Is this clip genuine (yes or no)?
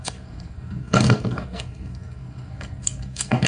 no